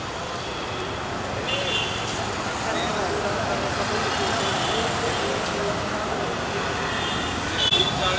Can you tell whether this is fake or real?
real